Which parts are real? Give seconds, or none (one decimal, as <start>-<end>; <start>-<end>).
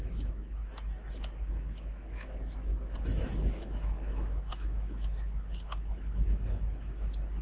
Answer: none